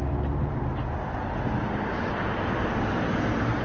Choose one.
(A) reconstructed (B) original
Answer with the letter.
B